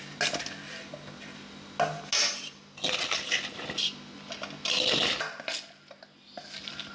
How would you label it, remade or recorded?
recorded